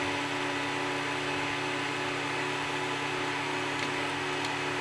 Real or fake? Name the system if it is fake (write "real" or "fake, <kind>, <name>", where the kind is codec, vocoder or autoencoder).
real